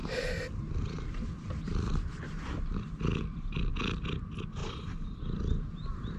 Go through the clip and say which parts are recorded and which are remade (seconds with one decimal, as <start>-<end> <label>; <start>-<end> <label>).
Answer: 0.0-2.8 remade; 2.8-4.6 recorded; 4.6-5.2 remade; 5.2-6.2 recorded